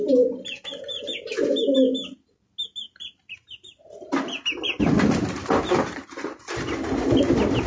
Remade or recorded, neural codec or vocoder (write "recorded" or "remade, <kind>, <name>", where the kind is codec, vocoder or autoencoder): recorded